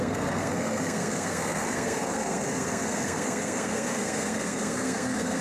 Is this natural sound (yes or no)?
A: no